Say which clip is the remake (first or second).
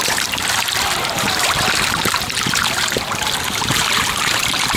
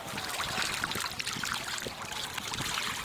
first